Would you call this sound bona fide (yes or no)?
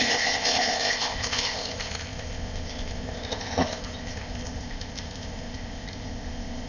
no